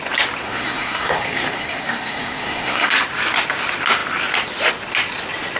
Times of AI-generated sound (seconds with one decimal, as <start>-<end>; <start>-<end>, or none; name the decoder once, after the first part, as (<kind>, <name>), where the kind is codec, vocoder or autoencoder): 0.4-2.9 (codec, SNAC)